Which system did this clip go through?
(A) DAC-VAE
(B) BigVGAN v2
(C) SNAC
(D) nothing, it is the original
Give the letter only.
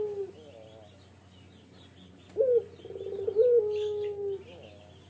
D